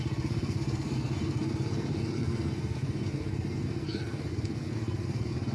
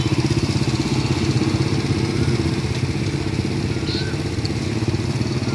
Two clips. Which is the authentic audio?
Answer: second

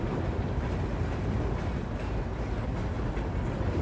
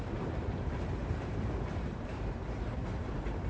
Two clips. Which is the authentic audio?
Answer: first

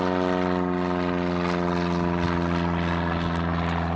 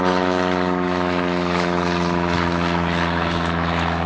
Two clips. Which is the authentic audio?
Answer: first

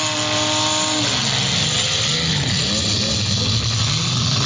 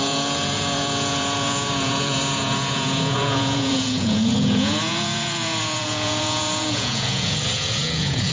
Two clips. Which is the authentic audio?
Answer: first